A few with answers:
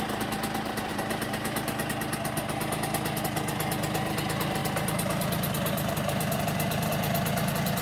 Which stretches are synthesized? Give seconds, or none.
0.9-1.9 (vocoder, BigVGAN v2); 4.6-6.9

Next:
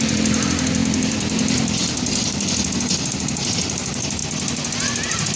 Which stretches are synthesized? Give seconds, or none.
0.0-4.2 (vocoder, BigVGAN v2)

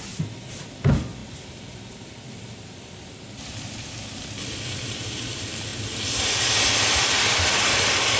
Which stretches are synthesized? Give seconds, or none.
0.0-5.7 (vocoder, BigVGAN v2); 6.7-8.2

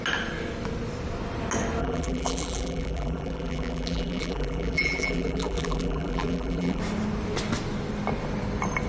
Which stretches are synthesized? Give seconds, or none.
1.8-6.8 (vocoder, BigVGAN v2)

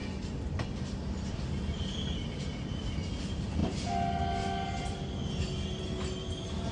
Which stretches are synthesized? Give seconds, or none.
none

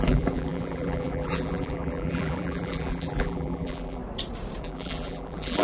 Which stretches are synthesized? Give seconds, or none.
0.0-4.0 (vocoder, BigVGAN v2); 4.6-5.6

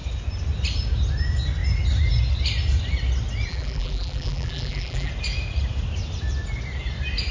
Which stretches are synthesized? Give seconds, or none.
3.5-5.1 (vocoder, BigVGAN v2)